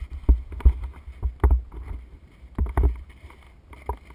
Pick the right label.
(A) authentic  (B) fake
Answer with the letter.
A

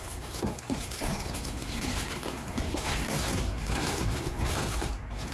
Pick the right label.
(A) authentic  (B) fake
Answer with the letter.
B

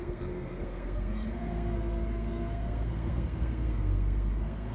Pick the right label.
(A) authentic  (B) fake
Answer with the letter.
B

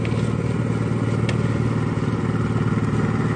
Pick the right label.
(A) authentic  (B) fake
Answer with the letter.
A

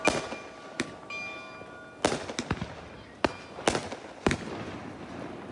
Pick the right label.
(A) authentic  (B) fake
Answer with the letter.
A